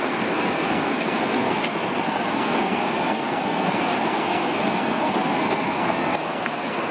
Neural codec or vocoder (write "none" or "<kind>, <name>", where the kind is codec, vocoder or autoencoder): codec, SNAC